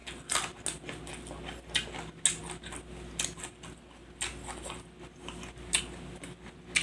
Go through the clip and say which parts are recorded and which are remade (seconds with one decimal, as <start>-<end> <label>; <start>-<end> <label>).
0.0-6.8 recorded